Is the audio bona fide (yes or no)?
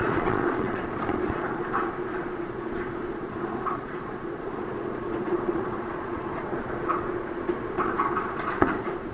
no